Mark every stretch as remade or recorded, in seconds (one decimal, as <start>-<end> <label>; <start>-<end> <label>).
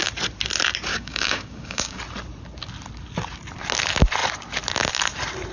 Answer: 0.0-0.9 recorded; 0.9-2.0 remade; 2.0-5.5 recorded